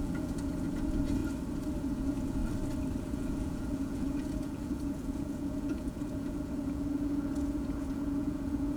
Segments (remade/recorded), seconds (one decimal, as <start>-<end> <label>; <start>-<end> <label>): 0.0-1.2 remade; 1.2-1.8 recorded; 1.8-2.4 remade; 2.4-3.0 recorded; 3.0-8.8 remade